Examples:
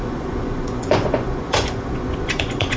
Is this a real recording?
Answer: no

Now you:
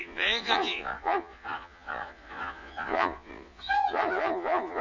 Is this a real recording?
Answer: no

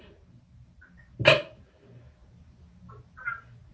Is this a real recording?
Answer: yes